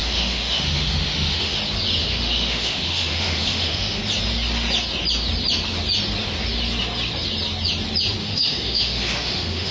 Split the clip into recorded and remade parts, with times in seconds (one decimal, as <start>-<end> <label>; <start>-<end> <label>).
0.0-1.6 remade; 1.6-2.0 recorded; 2.0-4.0 remade; 4.0-8.2 recorded; 8.2-9.7 remade